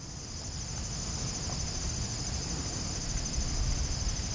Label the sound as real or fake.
real